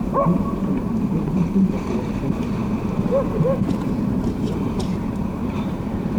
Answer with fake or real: fake